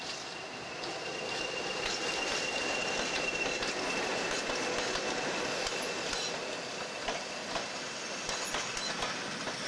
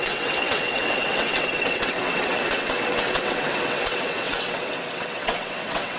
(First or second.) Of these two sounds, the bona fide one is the first